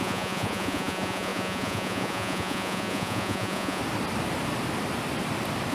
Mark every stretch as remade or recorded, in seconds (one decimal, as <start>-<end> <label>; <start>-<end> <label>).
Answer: 0.0-3.8 remade; 3.8-5.7 recorded